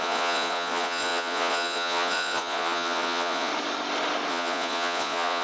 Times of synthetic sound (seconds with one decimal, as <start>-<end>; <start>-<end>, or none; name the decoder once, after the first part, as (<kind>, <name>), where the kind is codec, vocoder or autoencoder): 0.0-3.5 (vocoder, Vocos); 4.3-5.4